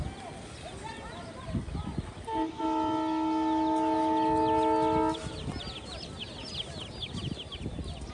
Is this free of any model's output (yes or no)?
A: yes